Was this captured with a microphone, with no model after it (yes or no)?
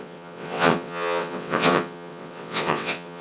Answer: no